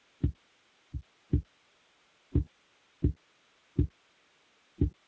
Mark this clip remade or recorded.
recorded